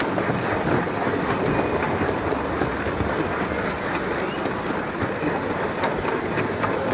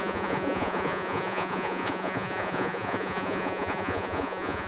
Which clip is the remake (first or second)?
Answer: second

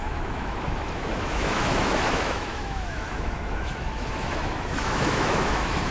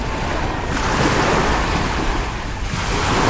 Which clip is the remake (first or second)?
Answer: first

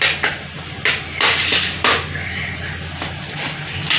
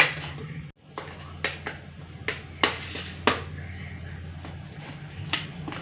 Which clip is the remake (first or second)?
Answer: first